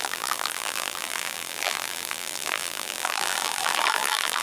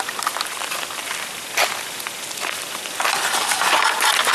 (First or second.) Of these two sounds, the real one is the second